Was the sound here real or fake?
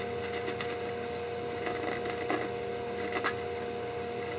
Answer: real